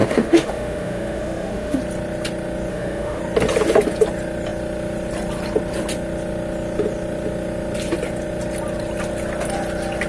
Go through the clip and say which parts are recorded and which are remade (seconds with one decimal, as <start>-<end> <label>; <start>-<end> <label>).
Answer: 0.0-1.8 remade; 1.8-2.7 recorded; 2.7-3.2 remade; 3.2-10.1 recorded